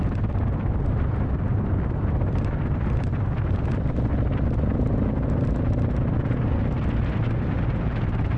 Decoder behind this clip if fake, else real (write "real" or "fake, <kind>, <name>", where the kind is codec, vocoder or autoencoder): real